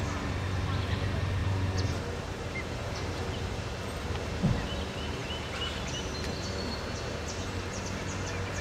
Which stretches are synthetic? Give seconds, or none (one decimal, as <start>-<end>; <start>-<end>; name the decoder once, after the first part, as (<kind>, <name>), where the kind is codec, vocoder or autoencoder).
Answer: 1.4-4.4 (vocoder, BigVGAN v2)